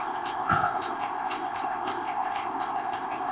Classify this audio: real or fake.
fake